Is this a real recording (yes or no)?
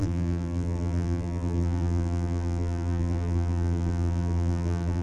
no